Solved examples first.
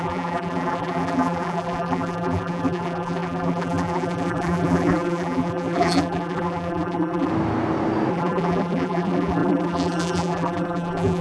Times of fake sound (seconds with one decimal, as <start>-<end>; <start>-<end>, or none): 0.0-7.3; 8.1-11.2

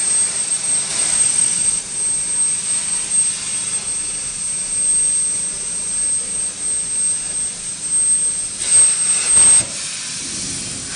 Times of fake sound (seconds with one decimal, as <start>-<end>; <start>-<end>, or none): 0.9-1.8

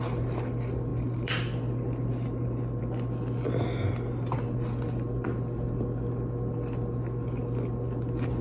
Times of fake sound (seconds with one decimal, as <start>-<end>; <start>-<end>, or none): none